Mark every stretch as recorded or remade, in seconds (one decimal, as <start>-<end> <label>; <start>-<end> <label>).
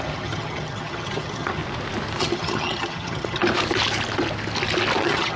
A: 0.0-1.6 remade; 1.6-2.2 recorded; 2.2-3.4 remade; 3.4-5.0 recorded; 5.0-5.4 remade